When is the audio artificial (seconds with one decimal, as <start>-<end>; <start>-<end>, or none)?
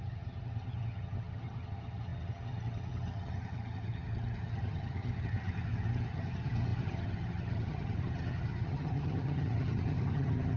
0.0-10.6